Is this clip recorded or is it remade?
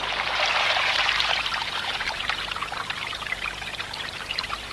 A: remade